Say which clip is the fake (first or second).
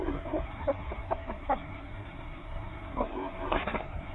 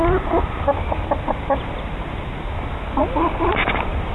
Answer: first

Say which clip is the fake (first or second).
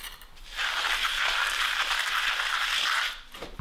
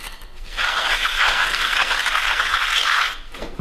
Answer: second